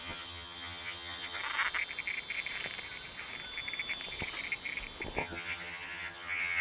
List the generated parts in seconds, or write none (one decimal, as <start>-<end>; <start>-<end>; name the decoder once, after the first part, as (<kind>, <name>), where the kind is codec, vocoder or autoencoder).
0.0-1.4 (vocoder, HiFi-GAN); 5.2-6.6